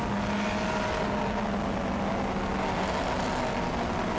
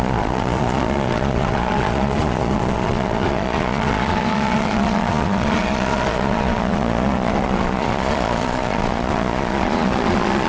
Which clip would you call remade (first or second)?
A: second